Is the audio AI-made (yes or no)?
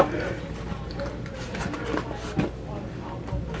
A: no